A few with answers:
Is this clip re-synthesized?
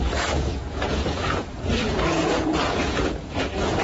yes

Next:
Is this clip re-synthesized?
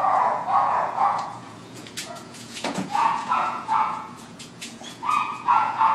yes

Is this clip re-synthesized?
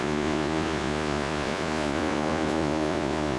yes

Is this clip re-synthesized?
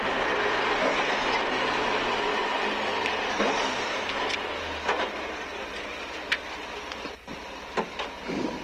no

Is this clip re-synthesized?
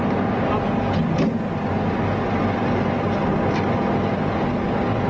no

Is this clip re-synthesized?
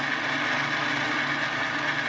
no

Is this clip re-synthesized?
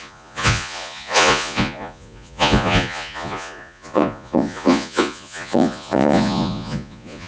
yes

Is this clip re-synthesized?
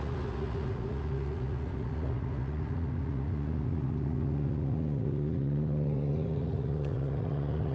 yes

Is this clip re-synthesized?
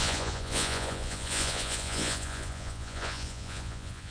yes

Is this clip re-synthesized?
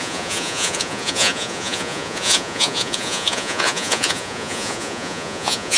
yes